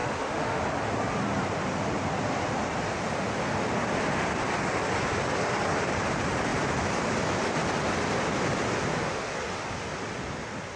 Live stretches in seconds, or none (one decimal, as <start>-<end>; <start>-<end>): 0.6-10.8